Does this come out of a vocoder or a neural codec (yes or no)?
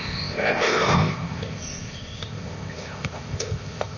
yes